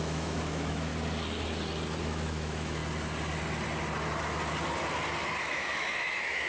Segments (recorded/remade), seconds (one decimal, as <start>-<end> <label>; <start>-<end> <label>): 0.0-0.9 remade; 0.9-2.0 recorded; 2.0-2.8 remade; 2.8-5.4 recorded; 5.4-6.5 remade